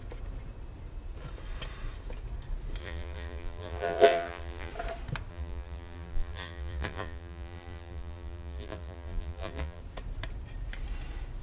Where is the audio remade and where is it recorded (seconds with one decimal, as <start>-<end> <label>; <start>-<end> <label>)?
0.0-2.8 recorded; 2.8-4.7 remade; 4.7-5.3 recorded; 5.3-9.8 remade; 9.8-11.4 recorded